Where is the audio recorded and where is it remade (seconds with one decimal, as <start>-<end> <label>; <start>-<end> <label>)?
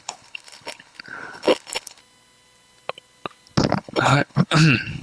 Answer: 0.0-2.0 remade; 2.0-3.7 recorded; 3.7-5.0 remade